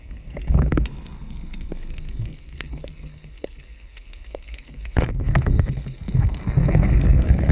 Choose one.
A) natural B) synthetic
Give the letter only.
B